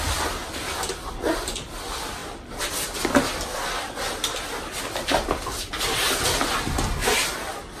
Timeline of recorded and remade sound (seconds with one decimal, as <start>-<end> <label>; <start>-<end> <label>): 0.0-0.4 recorded; 0.4-1.7 remade; 1.7-7.0 recorded; 7.0-7.8 remade

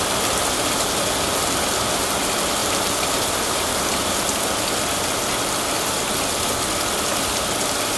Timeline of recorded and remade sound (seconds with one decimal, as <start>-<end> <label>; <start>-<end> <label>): 0.0-2.6 recorded; 2.6-3.9 remade; 3.9-8.0 recorded